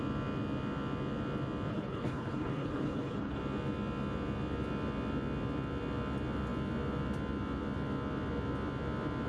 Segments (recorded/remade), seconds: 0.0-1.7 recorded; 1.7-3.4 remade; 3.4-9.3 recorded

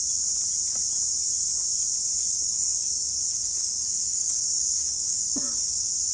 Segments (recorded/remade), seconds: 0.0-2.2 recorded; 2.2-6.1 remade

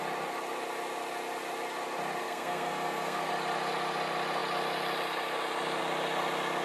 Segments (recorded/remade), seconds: 0.0-2.2 recorded; 2.2-3.3 remade; 3.3-6.6 recorded

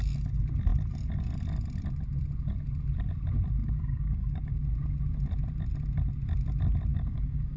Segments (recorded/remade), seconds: 0.0-3.6 recorded; 3.6-4.6 remade; 4.6-6.9 recorded; 6.9-7.6 remade

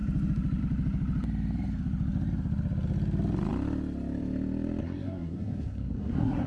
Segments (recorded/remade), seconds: 0.0-4.8 recorded; 4.8-6.5 remade

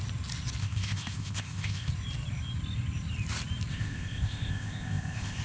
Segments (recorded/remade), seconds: 0.0-0.6 recorded; 0.6-1.9 remade; 1.9-3.7 recorded; 3.7-5.4 remade

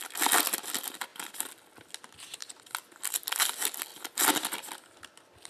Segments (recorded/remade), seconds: 0.0-5.5 recorded

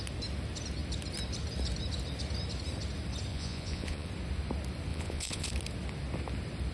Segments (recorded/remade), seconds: 0.0-3.3 recorded; 3.3-4.1 remade; 4.1-4.9 recorded; 4.9-5.5 remade; 5.5-6.7 recorded